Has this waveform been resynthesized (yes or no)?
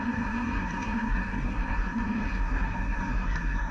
yes